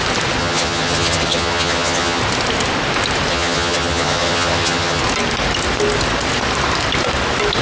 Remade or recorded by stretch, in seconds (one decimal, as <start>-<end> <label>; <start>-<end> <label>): 0.0-0.4 recorded; 0.4-2.2 remade; 2.2-3.3 recorded; 3.3-5.0 remade; 5.0-7.6 recorded

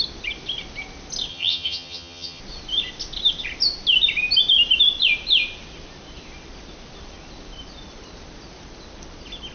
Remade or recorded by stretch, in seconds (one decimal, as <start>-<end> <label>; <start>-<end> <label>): 0.0-1.3 recorded; 1.3-2.4 remade; 2.4-9.5 recorded

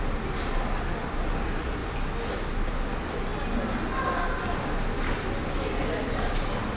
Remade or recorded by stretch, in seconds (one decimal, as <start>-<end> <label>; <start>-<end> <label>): 0.0-6.8 recorded

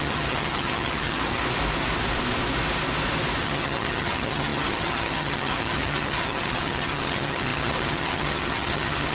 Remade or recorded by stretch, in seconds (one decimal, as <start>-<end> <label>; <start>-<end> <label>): 0.0-1.4 remade; 1.4-3.4 recorded; 3.4-9.1 remade

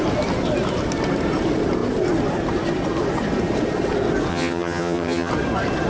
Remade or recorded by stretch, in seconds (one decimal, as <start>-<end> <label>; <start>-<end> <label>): 0.0-4.3 recorded; 4.3-5.3 remade; 5.3-5.9 recorded

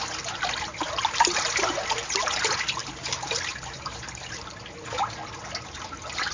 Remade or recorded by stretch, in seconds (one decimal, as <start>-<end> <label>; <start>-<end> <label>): 0.0-6.3 recorded

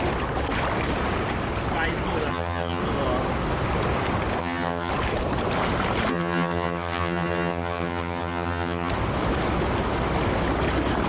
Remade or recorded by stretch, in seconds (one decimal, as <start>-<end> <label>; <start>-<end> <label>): 0.0-2.3 recorded; 2.3-2.8 remade; 2.8-4.4 recorded; 4.4-4.9 remade; 4.9-6.1 recorded; 6.1-8.9 remade; 8.9-11.1 recorded

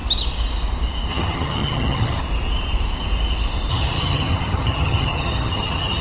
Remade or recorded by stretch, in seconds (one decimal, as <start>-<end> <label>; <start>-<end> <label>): 0.0-1.1 recorded; 1.1-2.2 remade; 2.2-3.7 recorded; 3.7-6.0 remade